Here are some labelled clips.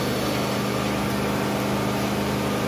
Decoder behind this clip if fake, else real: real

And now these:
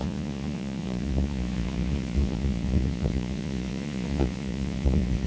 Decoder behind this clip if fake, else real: fake, vocoder, Vocos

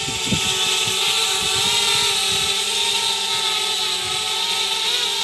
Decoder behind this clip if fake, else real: real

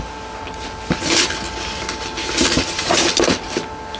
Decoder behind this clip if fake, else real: real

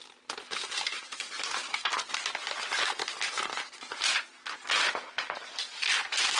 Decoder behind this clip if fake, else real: real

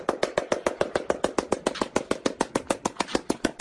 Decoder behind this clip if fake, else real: real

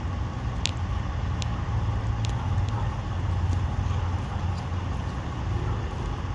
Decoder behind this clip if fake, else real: real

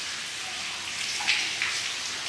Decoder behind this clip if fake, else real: real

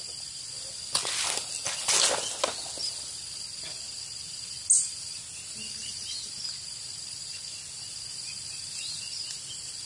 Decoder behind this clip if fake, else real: real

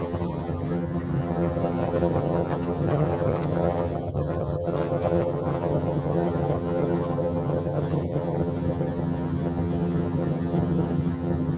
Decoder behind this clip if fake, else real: fake, vocoder, HiFi-GAN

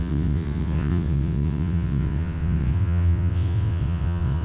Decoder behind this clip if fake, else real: fake, vocoder, WaveNeXt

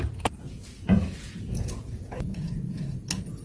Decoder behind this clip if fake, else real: fake, vocoder, Vocos